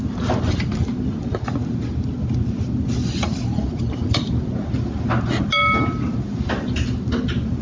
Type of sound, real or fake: real